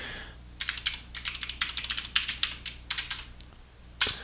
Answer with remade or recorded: recorded